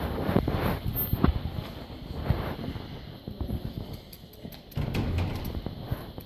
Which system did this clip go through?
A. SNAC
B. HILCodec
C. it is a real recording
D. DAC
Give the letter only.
C